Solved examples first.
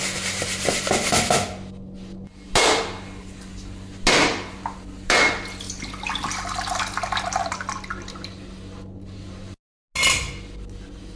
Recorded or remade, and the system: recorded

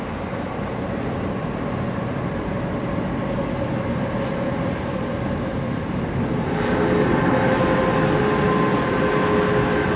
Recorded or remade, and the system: recorded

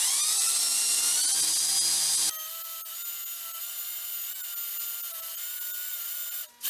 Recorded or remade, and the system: recorded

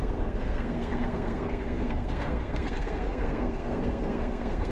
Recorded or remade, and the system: remade, codec, SNAC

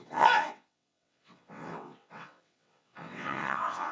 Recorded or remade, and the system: remade, vocoder, WaveNeXt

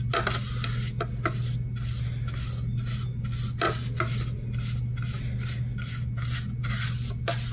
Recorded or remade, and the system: recorded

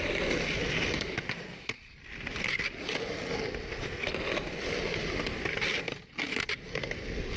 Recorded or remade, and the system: recorded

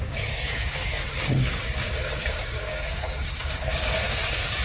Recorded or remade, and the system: remade, codec, DAC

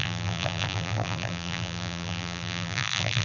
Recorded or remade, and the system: remade, vocoder, BigVGAN v2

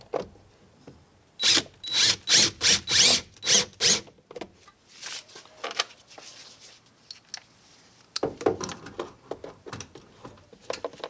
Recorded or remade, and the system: recorded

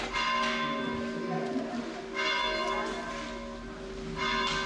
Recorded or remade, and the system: recorded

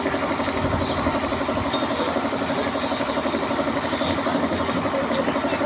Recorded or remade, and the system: recorded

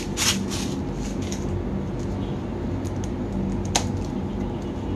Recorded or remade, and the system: recorded